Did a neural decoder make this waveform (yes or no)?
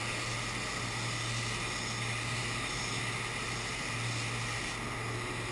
no